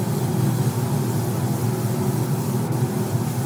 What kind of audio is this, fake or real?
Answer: real